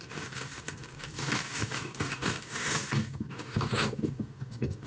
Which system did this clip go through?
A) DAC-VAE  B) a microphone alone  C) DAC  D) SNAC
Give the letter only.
C